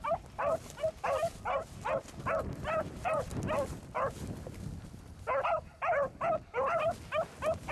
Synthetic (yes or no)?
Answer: no